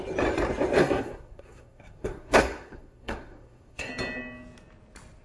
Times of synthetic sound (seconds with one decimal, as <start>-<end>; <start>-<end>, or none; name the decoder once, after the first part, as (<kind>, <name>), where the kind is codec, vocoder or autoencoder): 0.8-3.9 (codec, SNAC)